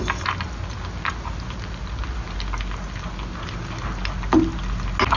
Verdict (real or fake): real